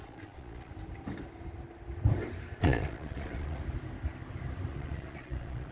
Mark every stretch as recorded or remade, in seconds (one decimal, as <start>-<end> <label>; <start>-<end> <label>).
0.0-0.7 remade; 0.7-2.6 recorded; 2.6-3.6 remade; 3.6-4.7 recorded; 4.7-5.7 remade